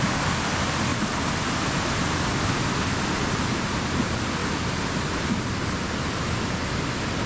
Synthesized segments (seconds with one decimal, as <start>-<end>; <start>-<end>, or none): none